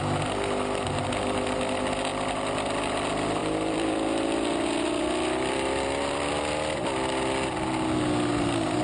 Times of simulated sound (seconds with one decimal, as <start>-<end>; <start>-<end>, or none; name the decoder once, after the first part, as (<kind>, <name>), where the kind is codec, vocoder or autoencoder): 3.4-6.3 (vocoder, BigVGAN v2)